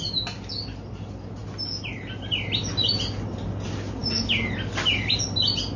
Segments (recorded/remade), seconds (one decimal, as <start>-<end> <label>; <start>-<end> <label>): 0.0-5.8 recorded